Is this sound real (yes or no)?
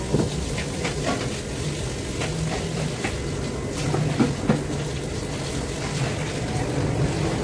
yes